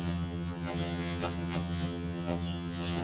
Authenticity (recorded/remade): remade